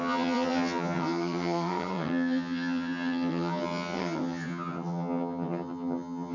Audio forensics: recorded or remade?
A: remade